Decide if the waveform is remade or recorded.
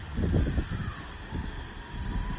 remade